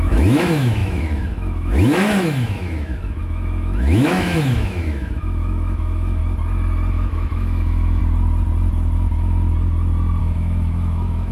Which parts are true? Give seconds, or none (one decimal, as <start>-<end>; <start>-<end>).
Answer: 6.2-6.9; 8.0-10.2